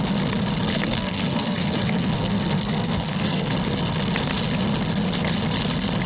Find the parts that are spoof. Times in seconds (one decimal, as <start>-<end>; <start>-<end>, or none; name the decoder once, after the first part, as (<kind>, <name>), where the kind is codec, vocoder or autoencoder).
0.7-3.5 (codec, SNAC)

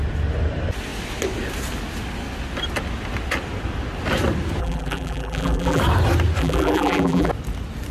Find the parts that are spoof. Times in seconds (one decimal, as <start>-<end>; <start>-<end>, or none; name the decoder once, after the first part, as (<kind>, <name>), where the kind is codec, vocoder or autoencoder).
4.6-5.8 (vocoder, BigVGAN v2); 6.4-7.3

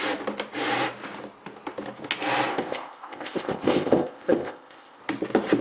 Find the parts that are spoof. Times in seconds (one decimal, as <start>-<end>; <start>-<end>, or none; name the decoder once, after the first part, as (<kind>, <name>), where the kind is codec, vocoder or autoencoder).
2.5-5.0 (codec, ZipCodec)

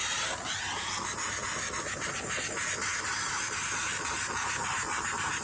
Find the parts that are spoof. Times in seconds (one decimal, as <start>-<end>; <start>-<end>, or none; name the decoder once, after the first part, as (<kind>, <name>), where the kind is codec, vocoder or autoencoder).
none

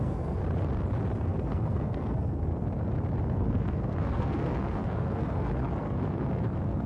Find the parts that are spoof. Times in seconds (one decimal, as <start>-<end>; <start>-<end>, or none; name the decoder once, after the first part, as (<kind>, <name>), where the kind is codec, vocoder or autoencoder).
0.0-0.4 (codec, SNAC); 1.2-2.5; 3.2-6.9